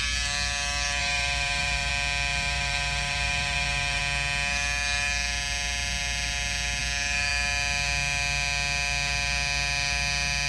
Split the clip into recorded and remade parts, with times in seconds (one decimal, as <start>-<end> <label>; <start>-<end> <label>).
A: 0.0-1.0 recorded; 1.0-1.9 remade; 1.9-2.3 recorded; 2.3-4.0 remade; 4.0-10.5 recorded